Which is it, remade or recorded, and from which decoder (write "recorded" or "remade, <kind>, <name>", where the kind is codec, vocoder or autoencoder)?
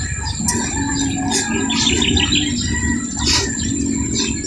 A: recorded